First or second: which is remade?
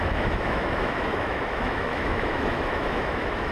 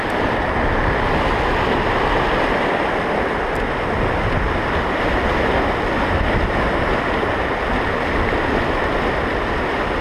first